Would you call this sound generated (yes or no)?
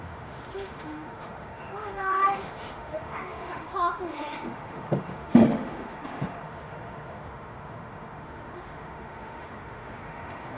yes